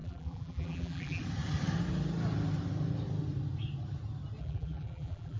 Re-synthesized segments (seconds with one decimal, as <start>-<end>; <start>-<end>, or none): 0.0-1.2; 4.4-5.4